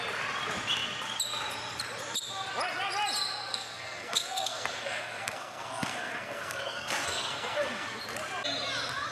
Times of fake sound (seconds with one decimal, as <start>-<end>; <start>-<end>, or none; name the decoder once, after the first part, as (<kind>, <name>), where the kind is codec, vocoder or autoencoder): 3.5-8.0 (codec, SNAC)